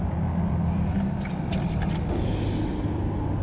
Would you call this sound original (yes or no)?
yes